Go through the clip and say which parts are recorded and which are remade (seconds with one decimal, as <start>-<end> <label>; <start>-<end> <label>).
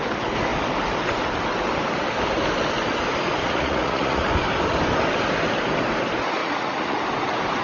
0.0-3.4 recorded; 3.4-4.3 remade; 4.3-6.4 recorded; 6.4-7.0 remade; 7.0-7.6 recorded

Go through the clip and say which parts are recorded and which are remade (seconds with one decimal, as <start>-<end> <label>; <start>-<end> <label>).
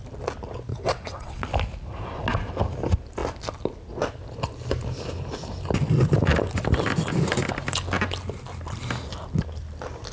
0.0-0.7 recorded; 0.7-1.4 remade; 1.4-10.1 recorded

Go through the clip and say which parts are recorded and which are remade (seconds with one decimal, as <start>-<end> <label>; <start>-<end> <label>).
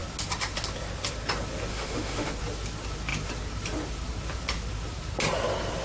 0.0-1.7 recorded; 1.7-2.3 remade; 2.3-5.8 recorded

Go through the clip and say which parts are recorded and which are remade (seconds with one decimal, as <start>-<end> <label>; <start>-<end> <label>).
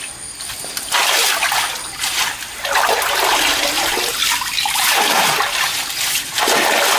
0.0-7.0 recorded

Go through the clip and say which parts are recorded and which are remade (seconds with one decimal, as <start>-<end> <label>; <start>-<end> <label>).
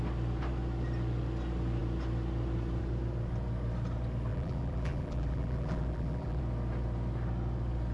0.0-4.3 recorded; 4.3-6.4 remade; 6.4-7.9 recorded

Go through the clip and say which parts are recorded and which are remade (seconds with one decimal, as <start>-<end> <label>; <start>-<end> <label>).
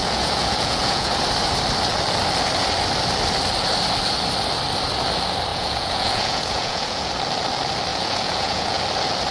0.0-1.1 remade; 1.1-5.5 recorded; 5.5-7.1 remade; 7.1-7.9 recorded; 7.9-8.8 remade; 8.8-9.3 recorded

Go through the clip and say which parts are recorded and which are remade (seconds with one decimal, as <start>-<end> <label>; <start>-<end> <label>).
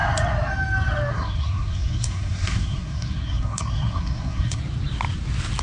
0.0-1.1 recorded; 1.1-4.6 remade; 4.6-5.6 recorded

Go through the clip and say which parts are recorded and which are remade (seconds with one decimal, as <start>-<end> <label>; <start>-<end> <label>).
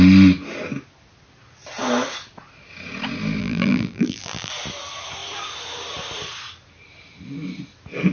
0.0-3.4 recorded; 3.4-4.5 remade; 4.5-8.1 recorded